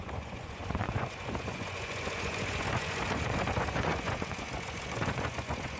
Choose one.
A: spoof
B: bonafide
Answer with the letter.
A